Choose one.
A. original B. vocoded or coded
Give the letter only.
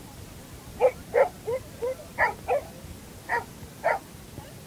A